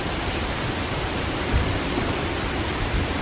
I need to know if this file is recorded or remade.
recorded